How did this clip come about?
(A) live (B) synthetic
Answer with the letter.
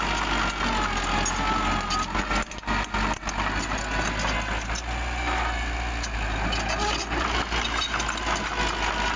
A